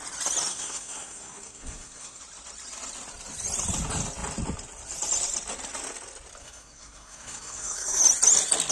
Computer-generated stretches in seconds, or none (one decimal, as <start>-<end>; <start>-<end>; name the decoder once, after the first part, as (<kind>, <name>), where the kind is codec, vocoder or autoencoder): 0.5-2.2 (codec, SNAC); 6.4-8.0